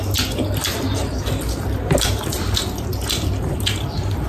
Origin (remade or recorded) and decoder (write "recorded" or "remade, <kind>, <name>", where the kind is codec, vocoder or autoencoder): remade, vocoder, BigVGAN v2